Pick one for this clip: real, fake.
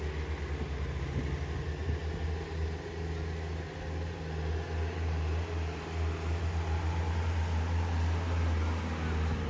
real